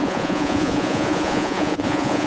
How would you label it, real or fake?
fake